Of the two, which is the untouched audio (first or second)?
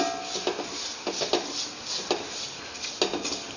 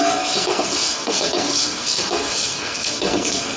first